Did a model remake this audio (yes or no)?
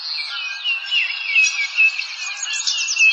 no